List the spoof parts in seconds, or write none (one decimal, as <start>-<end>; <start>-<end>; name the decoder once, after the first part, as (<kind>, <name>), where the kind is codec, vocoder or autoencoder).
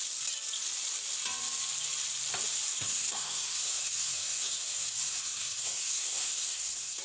2.7-7.0 (codec, SNAC)